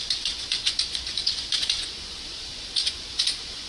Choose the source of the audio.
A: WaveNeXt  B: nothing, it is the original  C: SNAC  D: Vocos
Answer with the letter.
D